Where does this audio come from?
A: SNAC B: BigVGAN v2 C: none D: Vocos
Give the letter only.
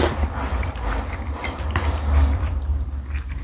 B